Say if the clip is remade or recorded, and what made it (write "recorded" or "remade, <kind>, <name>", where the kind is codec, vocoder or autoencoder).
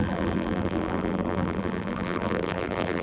remade, vocoder, BigVGAN v2